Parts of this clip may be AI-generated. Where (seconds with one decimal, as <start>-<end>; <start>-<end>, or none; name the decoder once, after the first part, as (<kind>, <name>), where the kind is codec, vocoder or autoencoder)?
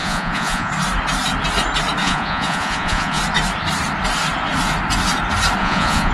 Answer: 0.0-0.7 (vocoder, Vocos); 2.0-3.2; 5.6-6.1